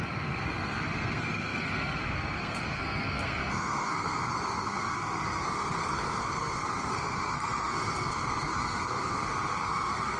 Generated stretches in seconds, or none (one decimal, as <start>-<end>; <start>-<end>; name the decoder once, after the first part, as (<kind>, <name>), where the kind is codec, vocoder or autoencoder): 0.0-10.2 (codec, SNAC)